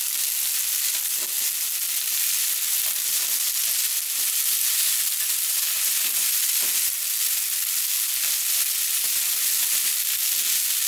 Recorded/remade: recorded